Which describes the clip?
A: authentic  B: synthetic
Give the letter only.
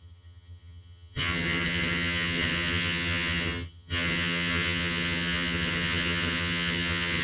B